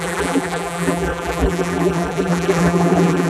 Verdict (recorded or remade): remade